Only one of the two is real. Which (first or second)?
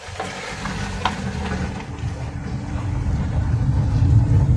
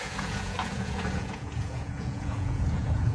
first